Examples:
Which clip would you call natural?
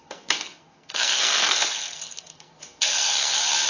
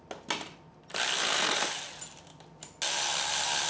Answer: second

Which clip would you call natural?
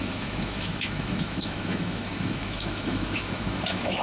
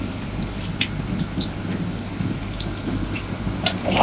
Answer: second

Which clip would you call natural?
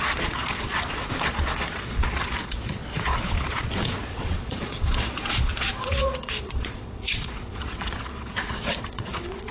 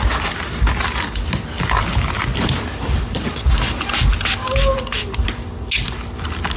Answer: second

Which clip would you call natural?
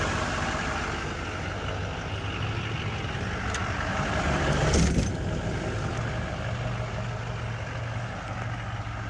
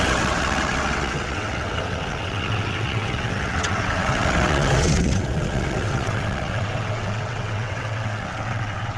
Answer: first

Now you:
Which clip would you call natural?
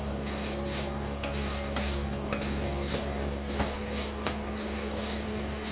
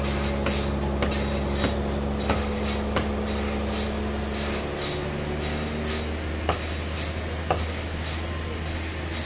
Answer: second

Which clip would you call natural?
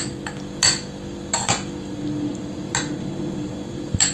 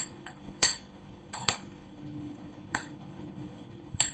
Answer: first